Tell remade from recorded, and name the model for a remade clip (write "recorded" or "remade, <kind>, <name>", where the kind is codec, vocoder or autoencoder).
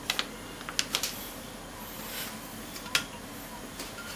recorded